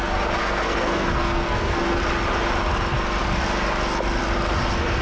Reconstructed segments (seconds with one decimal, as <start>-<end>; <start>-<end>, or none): 0.4-2.0